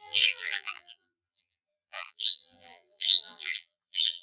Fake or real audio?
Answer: fake